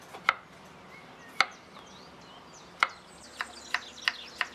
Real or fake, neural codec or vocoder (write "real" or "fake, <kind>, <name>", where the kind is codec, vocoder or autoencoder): real